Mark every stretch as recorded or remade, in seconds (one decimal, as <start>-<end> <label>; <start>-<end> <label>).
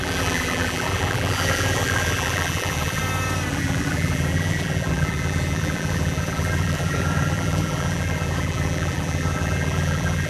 0.0-3.0 remade; 3.0-3.5 recorded; 3.5-10.3 remade